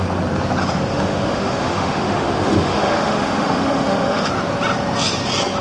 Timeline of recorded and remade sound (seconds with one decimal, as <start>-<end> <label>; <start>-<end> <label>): 0.0-0.9 recorded; 0.9-4.3 remade; 4.3-5.6 recorded